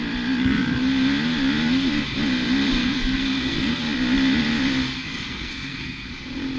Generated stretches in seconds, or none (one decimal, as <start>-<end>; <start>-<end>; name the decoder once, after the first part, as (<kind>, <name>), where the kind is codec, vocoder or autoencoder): 2.8-3.8 (codec, SNAC); 4.9-6.1